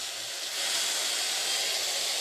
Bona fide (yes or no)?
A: yes